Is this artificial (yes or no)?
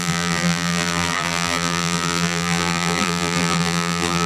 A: yes